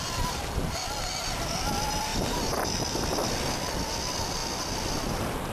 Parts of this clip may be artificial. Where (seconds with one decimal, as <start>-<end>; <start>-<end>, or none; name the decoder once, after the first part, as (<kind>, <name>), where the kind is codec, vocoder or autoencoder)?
2.1-2.6 (vocoder, BigVGAN v2)